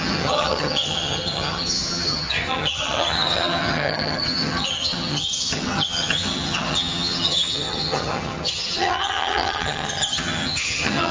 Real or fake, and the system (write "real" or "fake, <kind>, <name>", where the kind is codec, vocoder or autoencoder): fake, vocoder, HiFi-GAN